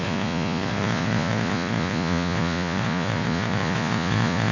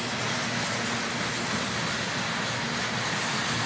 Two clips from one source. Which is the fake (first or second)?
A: first